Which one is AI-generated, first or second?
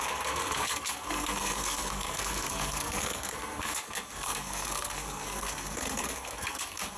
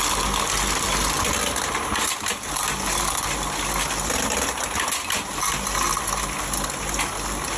first